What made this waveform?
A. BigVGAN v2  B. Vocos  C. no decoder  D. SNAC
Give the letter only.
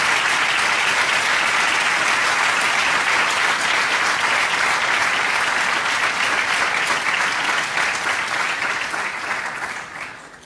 C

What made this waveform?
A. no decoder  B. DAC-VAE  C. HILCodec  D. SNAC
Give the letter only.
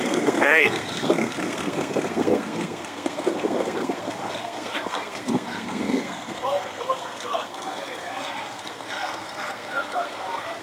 D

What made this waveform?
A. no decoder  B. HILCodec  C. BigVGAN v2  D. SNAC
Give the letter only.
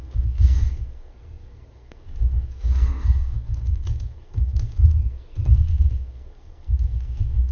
D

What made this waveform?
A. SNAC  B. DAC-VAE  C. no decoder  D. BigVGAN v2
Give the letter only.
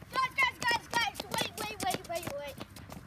C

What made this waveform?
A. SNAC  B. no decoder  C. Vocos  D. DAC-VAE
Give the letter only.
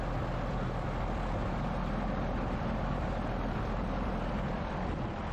B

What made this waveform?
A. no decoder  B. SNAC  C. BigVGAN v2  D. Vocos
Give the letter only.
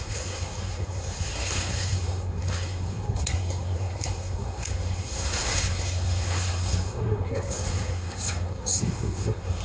B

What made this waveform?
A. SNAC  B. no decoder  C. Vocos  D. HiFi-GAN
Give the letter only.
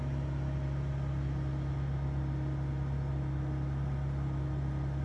B